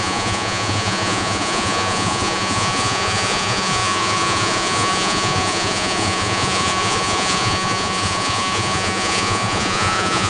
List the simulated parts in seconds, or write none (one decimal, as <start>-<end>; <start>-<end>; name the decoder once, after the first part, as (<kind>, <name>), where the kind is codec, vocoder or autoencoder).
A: 0.0-10.3 (vocoder, Vocos)